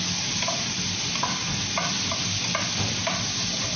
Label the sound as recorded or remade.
recorded